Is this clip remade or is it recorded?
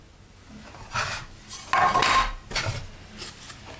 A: recorded